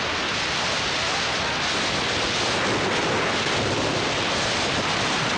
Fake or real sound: real